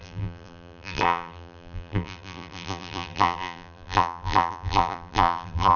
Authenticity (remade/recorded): remade